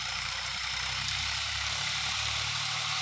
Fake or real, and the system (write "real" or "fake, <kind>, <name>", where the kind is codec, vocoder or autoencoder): fake, vocoder, BigVGAN v2